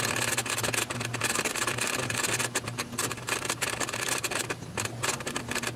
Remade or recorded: recorded